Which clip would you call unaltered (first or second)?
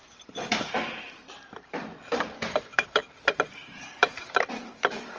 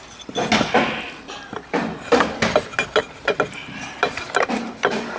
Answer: second